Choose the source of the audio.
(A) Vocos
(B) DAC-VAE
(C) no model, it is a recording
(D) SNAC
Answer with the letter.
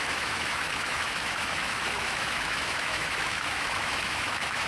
B